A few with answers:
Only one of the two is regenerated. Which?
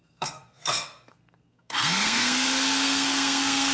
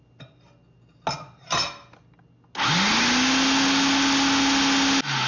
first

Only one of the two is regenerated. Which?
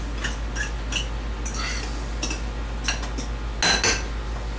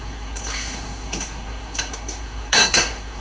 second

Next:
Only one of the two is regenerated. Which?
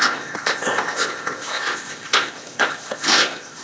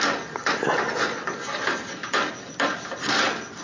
first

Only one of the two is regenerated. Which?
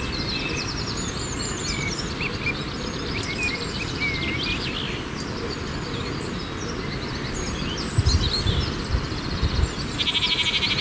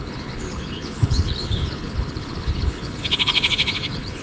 second